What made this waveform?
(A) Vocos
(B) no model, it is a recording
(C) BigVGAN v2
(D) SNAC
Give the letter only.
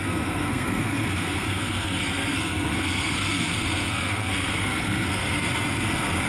D